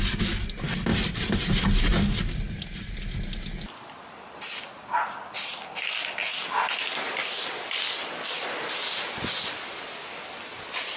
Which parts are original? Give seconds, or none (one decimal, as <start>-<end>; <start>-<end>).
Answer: 0.0-0.9; 1.5-11.0